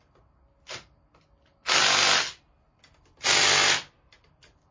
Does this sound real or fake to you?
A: real